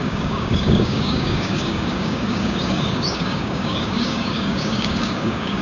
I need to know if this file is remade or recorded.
remade